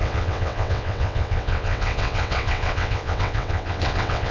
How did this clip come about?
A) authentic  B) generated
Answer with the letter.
B